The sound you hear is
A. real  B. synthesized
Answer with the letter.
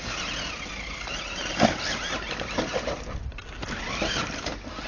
A